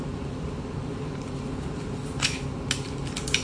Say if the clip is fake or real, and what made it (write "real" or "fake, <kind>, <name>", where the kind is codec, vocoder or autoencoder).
real